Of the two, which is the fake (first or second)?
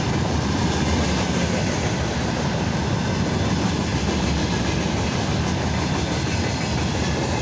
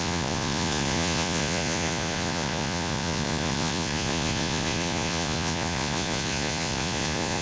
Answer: second